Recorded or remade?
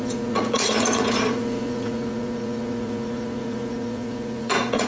remade